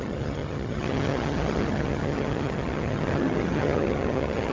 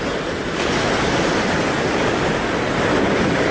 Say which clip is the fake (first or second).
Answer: first